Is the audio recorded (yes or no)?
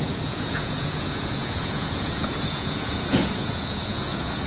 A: no